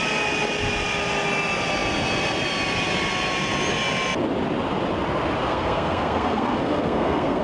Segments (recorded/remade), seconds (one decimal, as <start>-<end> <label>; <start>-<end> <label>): 0.0-5.5 recorded; 5.5-7.4 remade